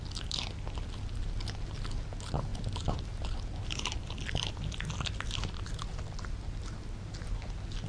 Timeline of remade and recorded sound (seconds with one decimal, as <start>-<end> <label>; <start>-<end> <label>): 0.0-7.9 recorded